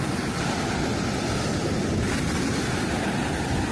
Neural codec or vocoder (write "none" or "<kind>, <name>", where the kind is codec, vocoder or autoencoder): vocoder, BigVGAN v2